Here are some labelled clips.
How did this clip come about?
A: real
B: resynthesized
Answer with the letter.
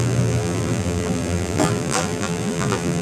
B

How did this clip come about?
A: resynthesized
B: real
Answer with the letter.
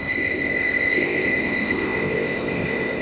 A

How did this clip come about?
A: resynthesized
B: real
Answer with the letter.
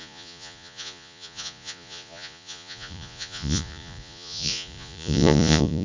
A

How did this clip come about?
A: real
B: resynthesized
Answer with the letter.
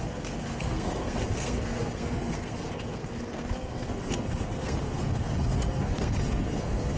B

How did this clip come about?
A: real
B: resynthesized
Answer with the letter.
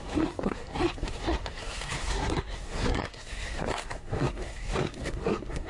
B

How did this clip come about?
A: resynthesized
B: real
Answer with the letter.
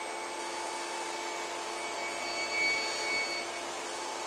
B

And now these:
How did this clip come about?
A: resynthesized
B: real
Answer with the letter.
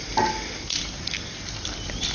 B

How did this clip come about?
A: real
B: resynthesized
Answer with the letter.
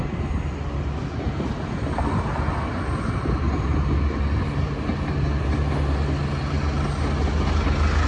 A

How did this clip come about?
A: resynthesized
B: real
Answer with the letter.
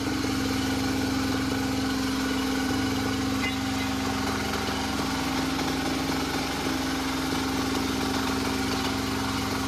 B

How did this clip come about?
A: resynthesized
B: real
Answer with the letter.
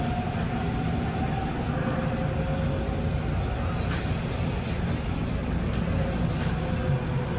B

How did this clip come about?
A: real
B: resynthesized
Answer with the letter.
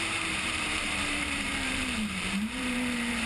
B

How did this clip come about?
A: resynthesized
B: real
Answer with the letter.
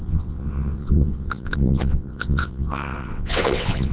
A